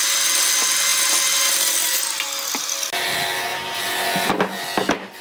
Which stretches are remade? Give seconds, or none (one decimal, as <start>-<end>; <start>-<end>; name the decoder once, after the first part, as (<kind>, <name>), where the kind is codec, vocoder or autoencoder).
none